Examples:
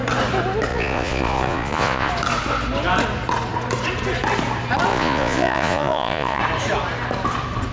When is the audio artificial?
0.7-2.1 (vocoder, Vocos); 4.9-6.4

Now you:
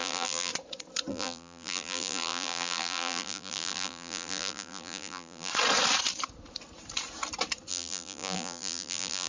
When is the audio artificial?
0.0-0.5 (vocoder, BigVGAN v2); 1.1-5.5; 7.7-9.3

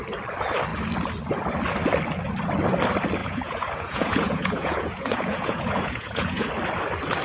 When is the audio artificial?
3.2-6.5 (vocoder, Vocos)

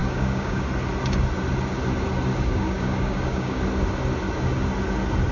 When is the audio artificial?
0.0-0.6 (codec, DAC); 2.3-3.6

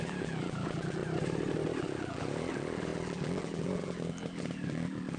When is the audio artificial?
0.0-1.0 (vocoder, BigVGAN v2); 1.8-5.2

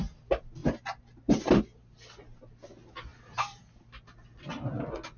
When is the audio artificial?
0.6-1.6 (vocoder, BigVGAN v2); 3.1-3.6